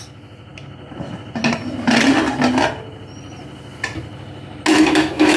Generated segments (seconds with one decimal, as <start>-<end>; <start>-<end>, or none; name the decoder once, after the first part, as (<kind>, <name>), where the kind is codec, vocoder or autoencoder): 4.7-5.4 (autoencoder, DAC-VAE)